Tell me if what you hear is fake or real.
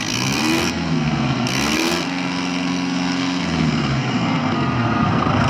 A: fake